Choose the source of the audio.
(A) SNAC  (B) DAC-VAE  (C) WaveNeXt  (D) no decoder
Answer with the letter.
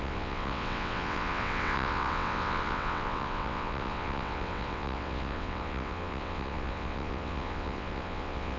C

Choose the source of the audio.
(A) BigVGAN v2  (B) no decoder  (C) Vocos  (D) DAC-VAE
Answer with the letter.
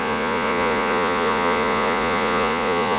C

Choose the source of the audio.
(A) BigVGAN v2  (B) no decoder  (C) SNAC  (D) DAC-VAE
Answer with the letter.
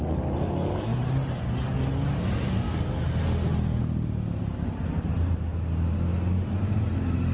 B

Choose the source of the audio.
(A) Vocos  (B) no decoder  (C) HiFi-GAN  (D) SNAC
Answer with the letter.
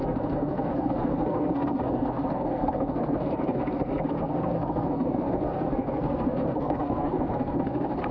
D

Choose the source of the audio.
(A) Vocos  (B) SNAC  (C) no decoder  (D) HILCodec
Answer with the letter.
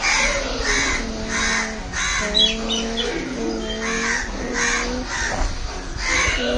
C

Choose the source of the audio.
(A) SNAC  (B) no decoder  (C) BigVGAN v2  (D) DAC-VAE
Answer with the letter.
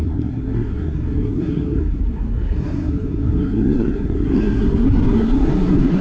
A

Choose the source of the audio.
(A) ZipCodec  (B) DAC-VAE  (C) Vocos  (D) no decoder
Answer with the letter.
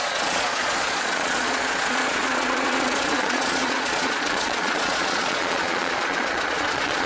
C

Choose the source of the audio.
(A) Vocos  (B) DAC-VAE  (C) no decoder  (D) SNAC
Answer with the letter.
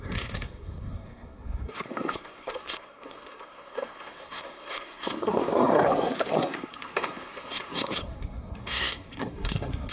D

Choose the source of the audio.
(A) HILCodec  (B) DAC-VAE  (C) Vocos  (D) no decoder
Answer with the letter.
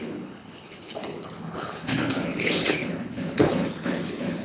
A